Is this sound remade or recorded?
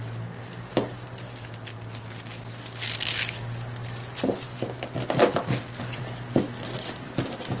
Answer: recorded